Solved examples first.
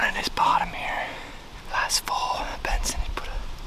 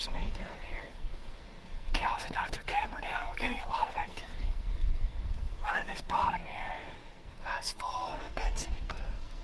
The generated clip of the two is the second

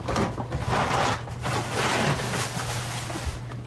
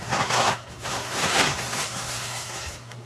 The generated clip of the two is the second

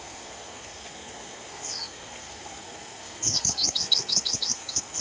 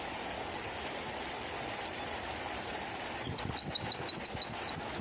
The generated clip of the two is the first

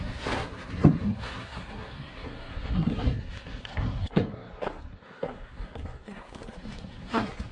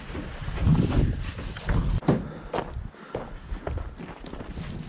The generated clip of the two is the first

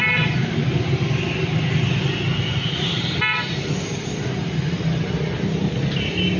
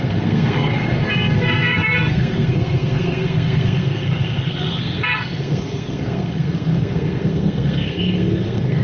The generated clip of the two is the second